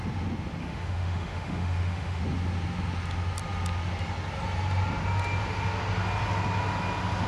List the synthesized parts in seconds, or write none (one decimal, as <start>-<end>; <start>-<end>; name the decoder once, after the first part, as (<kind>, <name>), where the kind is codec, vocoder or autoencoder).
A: 0.6-2.2 (autoencoder, DAC-VAE)